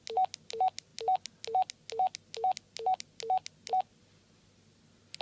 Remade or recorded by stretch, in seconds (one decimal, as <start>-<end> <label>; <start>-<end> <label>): 0.0-5.2 recorded